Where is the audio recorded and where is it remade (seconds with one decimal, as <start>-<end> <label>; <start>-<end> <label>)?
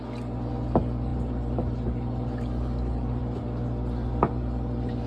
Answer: 0.0-1.1 recorded; 1.1-3.2 remade; 3.2-5.1 recorded